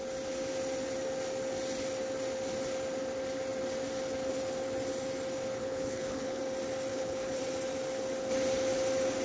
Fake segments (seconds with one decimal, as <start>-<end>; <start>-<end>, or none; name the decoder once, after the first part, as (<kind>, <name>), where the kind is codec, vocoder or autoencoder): 5.6-6.4 (codec, HILCodec); 6.9-7.4